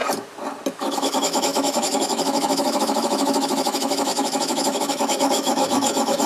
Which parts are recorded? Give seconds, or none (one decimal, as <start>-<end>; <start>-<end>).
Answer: 0.0-0.7